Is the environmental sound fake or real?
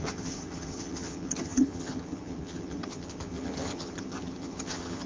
fake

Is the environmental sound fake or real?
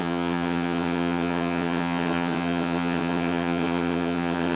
fake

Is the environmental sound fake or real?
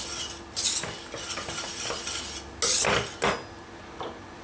real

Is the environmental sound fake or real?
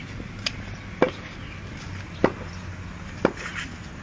real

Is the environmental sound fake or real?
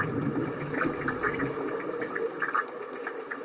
real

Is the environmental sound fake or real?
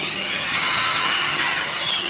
fake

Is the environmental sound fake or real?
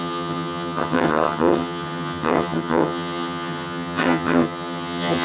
fake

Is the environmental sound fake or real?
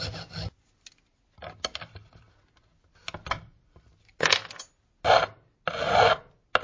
real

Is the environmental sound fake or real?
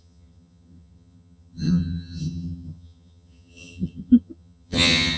fake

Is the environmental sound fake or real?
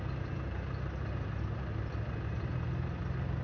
real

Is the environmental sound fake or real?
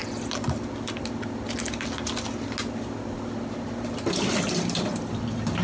real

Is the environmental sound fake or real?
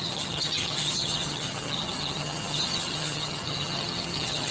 fake